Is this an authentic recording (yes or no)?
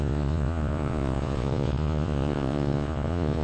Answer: no